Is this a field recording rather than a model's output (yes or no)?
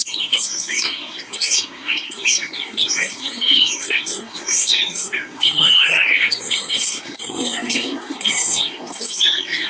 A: no